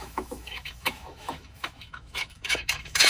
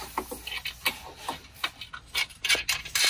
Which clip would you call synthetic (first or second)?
first